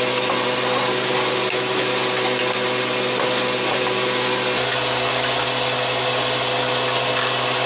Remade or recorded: recorded